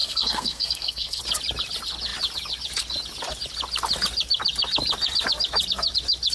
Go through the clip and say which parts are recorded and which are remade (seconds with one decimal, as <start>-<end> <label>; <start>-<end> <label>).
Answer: 0.0-1.2 remade; 1.2-6.3 recorded